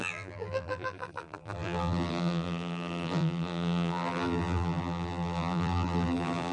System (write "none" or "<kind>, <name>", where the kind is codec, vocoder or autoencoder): vocoder, BigVGAN v2